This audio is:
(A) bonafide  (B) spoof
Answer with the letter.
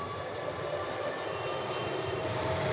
B